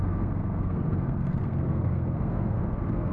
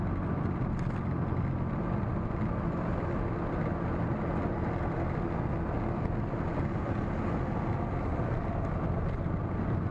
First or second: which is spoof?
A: first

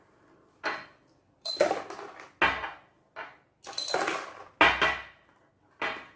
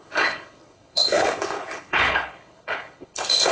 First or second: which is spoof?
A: second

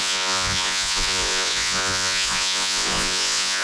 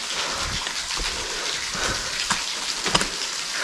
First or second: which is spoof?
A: first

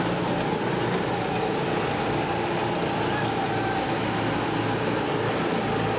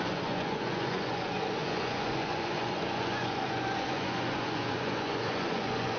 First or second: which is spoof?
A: second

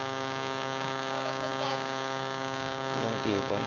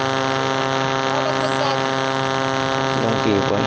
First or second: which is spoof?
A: first